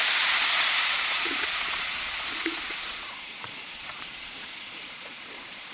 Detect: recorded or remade remade